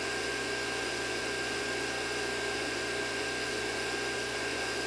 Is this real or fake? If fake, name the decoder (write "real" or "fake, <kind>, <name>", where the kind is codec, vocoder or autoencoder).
fake, vocoder, Vocos